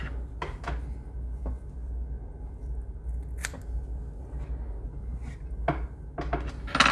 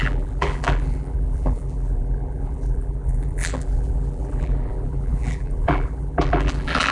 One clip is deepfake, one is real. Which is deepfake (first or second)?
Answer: second